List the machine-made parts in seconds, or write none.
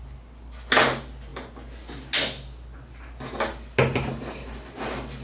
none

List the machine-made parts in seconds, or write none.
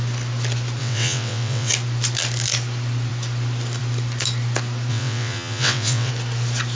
0.8-1.7 (vocoder, WaveNeXt); 4.9-6.1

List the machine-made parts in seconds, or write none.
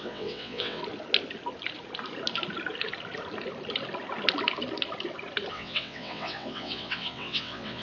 0.0-0.8 (vocoder, WaveNeXt); 5.5-7.8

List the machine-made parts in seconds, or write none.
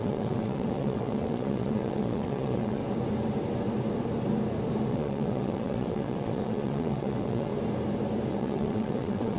0.0-2.8 (vocoder, WaveNeXt); 4.9-7.5; 8.3-9.4